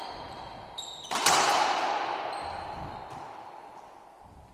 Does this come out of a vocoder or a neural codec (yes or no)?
no